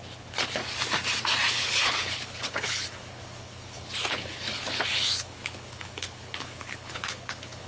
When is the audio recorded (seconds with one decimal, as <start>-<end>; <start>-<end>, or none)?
0.6-1.5